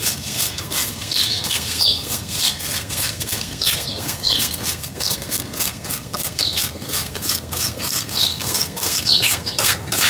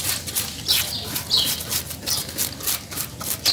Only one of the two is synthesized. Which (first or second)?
first